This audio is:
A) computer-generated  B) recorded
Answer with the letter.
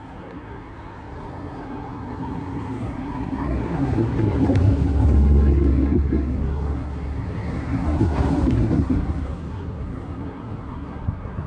A